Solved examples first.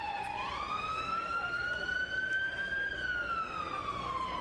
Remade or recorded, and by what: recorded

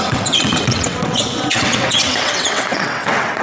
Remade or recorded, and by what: remade, vocoder, WaveNeXt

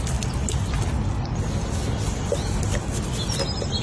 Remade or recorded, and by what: recorded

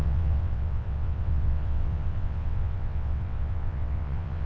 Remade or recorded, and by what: remade, vocoder, WaveNeXt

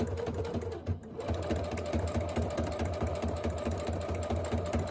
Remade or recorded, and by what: recorded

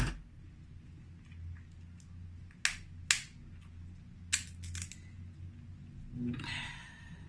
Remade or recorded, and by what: recorded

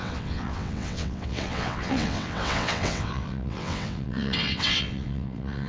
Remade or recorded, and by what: remade, vocoder, WaveNeXt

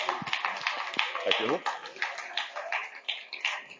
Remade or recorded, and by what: recorded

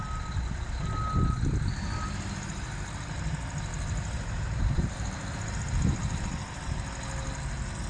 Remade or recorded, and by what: recorded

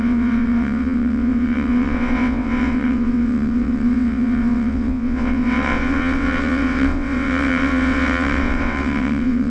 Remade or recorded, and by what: remade, vocoder, WaveNeXt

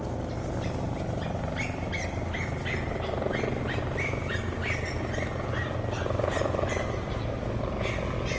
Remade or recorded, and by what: recorded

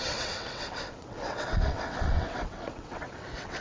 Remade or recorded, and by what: remade, vocoder, WaveNeXt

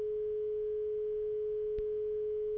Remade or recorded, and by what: recorded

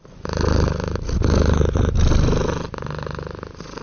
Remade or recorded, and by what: recorded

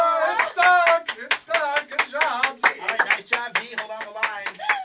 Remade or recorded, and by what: recorded